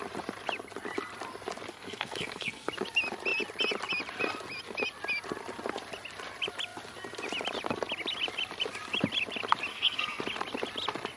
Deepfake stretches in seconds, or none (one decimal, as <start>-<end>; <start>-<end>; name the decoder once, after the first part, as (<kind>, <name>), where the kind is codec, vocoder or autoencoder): 1.7-2.7 (codec, SNAC); 9.7-10.2